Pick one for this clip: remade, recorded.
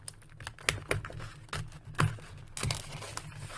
recorded